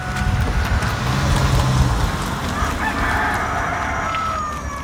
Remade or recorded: recorded